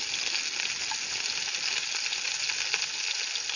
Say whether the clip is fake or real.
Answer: real